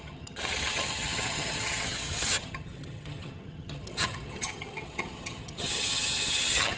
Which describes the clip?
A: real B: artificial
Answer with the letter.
B